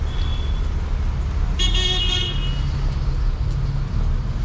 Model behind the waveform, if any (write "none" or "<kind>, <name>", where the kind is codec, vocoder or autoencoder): none